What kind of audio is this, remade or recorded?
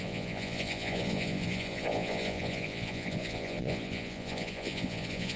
remade